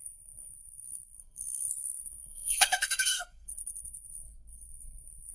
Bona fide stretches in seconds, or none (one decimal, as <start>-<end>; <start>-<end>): none